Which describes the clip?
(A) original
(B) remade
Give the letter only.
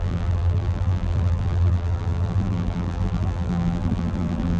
B